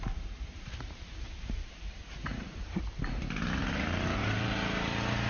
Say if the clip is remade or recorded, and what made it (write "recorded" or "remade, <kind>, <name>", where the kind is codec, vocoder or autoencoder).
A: remade, vocoder, BigVGAN v2